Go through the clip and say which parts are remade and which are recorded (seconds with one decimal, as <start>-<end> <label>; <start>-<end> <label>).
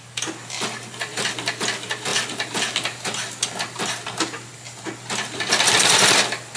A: 0.0-6.6 recorded